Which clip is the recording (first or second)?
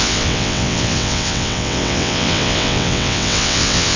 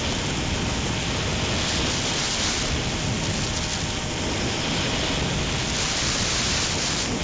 second